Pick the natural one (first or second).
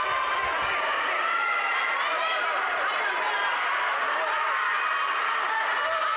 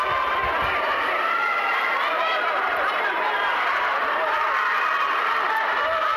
first